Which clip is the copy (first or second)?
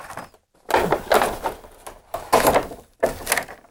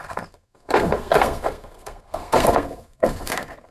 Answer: second